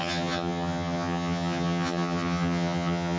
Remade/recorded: remade